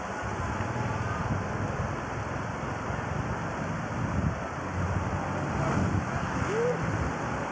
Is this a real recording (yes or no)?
yes